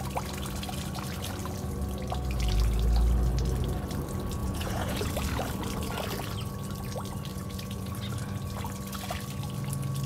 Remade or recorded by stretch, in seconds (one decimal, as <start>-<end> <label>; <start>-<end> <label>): 0.0-4.4 recorded; 4.4-5.1 remade; 5.1-7.3 recorded; 7.3-7.9 remade; 7.9-10.1 recorded